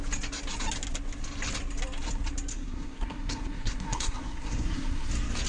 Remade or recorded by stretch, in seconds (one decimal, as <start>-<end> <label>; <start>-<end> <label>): 0.0-2.5 recorded; 2.5-5.1 remade; 5.1-5.5 recorded

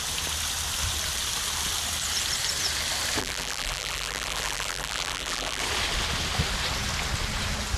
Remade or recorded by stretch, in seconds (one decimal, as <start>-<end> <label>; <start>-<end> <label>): 0.0-3.2 recorded; 3.2-5.6 remade; 5.6-7.8 recorded

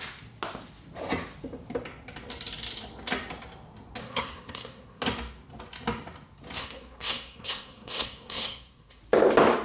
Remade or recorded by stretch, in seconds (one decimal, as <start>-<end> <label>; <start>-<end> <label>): 0.0-4.0 recorded; 4.0-5.0 remade; 5.0-6.6 recorded; 6.6-9.0 remade; 9.0-9.6 recorded

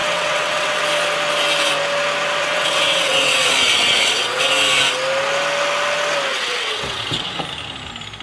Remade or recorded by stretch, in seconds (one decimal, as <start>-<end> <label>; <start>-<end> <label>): 0.0-0.8 remade; 0.8-2.4 recorded; 2.4-4.5 remade; 4.5-6.3 recorded; 6.3-7.4 remade; 7.4-8.2 recorded

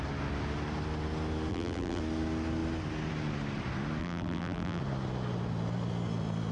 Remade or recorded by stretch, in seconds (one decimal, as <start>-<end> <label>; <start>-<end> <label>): 0.0-1.5 recorded; 1.5-2.0 remade; 2.0-4.0 recorded; 4.0-4.8 remade; 4.8-6.5 recorded